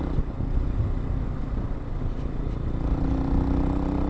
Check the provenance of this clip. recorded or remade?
recorded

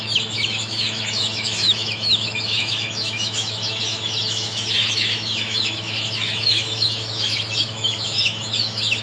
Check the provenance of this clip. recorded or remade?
remade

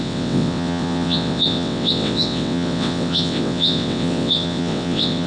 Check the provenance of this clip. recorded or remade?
remade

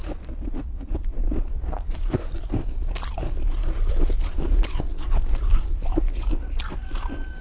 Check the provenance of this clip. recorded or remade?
recorded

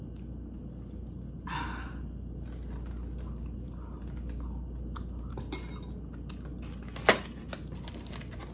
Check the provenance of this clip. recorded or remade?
recorded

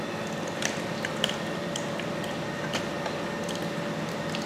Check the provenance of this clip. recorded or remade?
recorded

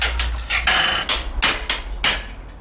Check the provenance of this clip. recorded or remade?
recorded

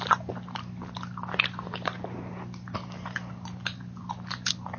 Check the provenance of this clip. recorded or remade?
recorded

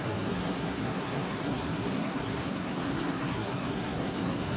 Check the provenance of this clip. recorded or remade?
remade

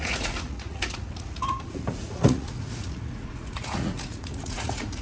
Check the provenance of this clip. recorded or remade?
remade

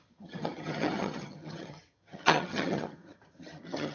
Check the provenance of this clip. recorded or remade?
remade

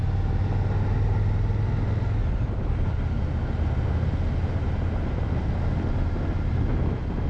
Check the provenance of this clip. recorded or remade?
recorded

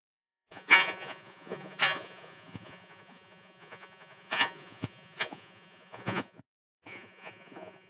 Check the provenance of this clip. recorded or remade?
remade